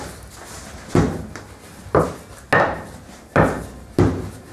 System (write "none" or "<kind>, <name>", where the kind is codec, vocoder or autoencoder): none